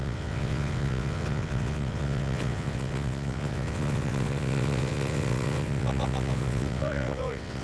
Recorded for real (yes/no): no